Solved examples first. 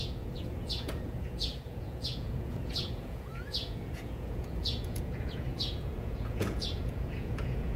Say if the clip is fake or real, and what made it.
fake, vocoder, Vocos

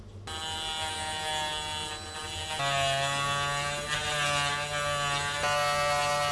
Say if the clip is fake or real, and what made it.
real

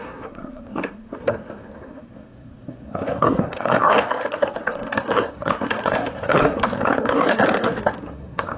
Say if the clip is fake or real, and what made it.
fake, codec, SNAC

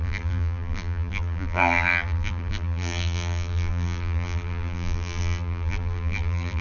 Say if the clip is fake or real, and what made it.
fake, vocoder, BigVGAN v2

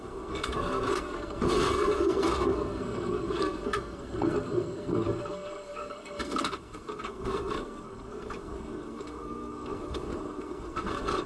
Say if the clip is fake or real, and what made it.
fake, codec, SNAC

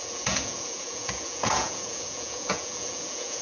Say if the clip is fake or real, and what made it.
fake, vocoder, Vocos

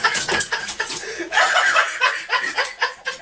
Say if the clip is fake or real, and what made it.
fake, vocoder, Vocos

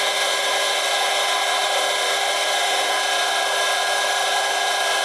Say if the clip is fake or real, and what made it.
real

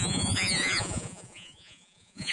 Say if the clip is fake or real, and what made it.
fake, vocoder, Vocos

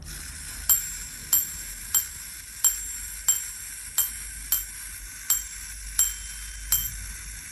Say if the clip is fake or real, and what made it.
real